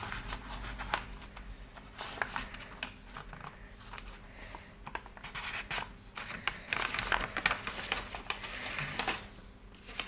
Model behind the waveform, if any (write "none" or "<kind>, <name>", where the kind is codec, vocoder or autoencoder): none